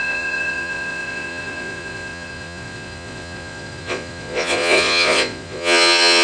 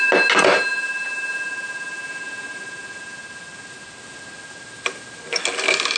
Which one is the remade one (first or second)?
first